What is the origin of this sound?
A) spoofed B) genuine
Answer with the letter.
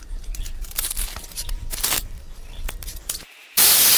A